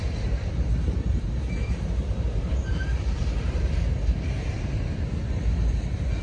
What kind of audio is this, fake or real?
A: fake